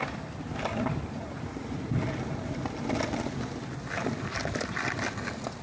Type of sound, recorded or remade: recorded